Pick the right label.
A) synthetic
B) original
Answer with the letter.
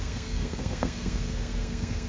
A